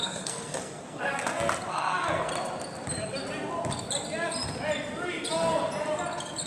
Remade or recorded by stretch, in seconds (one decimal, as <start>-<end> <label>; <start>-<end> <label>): 0.0-1.1 remade; 1.1-1.7 recorded; 1.7-2.3 remade; 2.3-6.5 recorded